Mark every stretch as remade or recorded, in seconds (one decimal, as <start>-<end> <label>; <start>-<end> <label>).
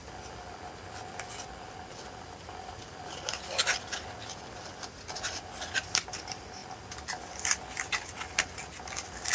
0.0-9.3 recorded